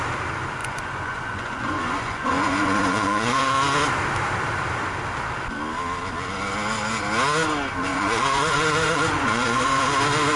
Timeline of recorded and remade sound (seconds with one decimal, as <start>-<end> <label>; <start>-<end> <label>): 0.0-0.6 recorded; 0.6-3.4 remade; 3.4-7.9 recorded; 7.9-9.8 remade; 9.8-10.4 recorded